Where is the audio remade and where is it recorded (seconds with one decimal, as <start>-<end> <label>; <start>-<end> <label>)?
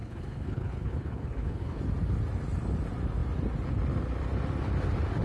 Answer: 0.0-1.8 remade; 1.8-5.2 recorded